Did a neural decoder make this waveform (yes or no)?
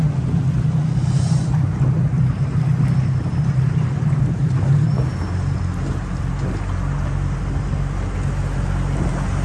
no